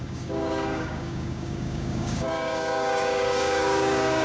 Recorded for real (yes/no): no